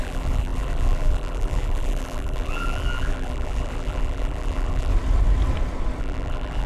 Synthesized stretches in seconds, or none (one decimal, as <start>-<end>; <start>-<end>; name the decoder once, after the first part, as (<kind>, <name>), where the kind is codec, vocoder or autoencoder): 0.0-4.9 (vocoder, BigVGAN v2); 6.0-6.7